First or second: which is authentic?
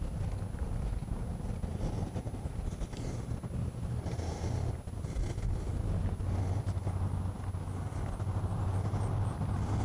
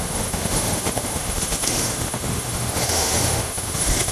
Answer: first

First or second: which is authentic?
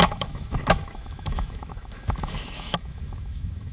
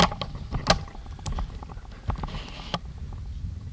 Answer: second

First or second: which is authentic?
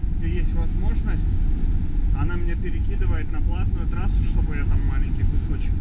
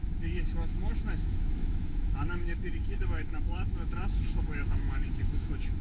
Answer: first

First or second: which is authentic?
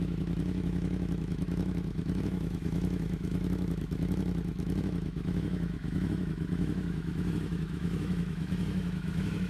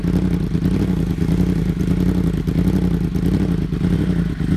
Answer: second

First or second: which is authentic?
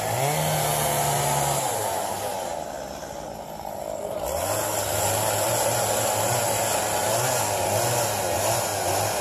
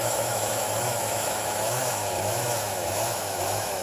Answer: first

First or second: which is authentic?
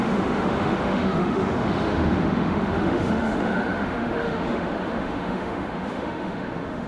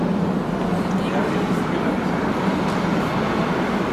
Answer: second